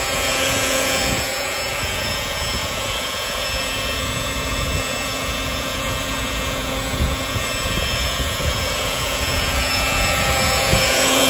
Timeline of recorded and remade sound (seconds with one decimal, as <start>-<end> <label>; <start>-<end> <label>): 0.0-11.3 remade